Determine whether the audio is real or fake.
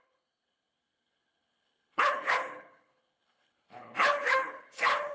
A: fake